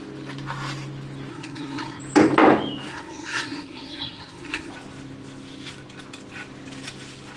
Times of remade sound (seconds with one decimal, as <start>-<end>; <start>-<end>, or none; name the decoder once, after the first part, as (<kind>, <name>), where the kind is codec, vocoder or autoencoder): 1.3-2.0 (codec, SNAC); 2.9-4.7